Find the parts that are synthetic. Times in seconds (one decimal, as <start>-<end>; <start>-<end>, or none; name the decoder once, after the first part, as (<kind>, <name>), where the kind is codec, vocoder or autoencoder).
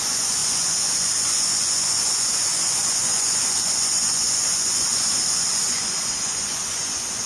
0.0-7.3 (vocoder, Vocos)